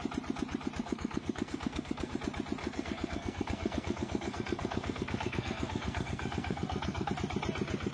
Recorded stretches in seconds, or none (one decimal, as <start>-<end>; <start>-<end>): 0.0-0.8; 2.1-2.6; 7.1-7.9